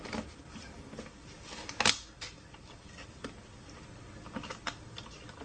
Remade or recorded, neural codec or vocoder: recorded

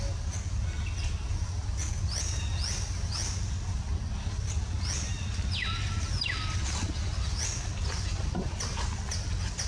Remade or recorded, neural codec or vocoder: recorded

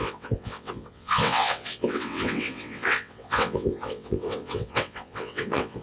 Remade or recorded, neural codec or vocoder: remade, vocoder, WaveNeXt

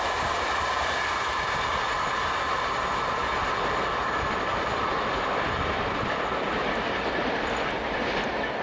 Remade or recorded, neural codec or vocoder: recorded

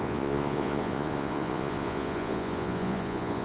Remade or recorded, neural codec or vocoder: remade, vocoder, Vocos